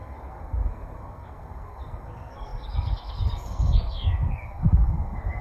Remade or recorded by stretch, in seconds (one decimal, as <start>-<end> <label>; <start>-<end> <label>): 0.0-5.4 remade